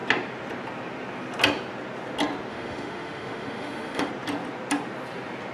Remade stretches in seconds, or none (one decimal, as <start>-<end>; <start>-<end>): 2.5-4.1